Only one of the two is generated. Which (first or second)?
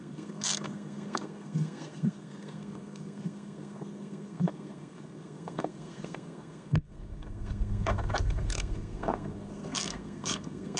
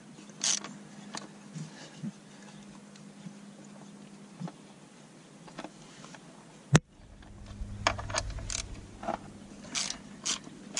first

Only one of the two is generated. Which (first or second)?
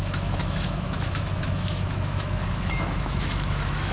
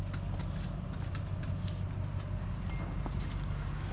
first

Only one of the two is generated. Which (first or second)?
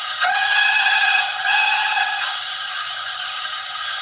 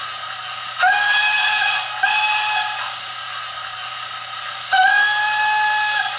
first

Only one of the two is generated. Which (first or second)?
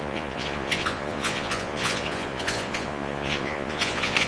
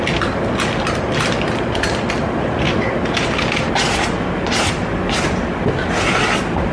first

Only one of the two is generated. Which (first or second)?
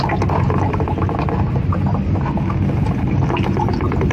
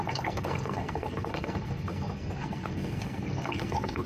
second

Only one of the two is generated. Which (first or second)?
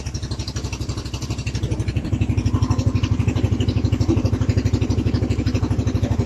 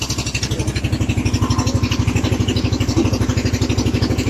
first